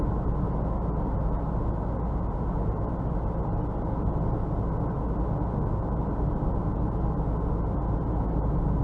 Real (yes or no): yes